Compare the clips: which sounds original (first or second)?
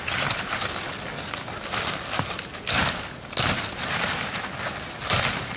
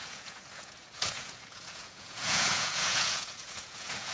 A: first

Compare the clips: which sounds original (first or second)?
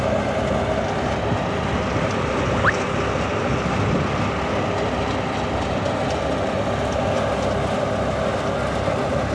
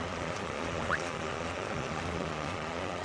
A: first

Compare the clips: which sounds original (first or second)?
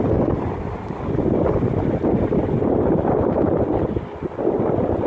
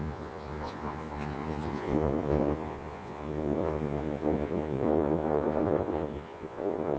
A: first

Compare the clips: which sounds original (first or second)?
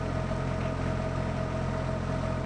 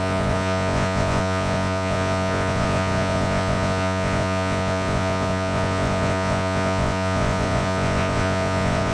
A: first